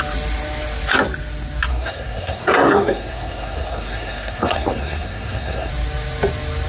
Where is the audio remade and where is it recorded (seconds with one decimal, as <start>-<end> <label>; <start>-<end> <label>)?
0.0-1.7 recorded; 1.7-5.7 remade; 5.7-6.7 recorded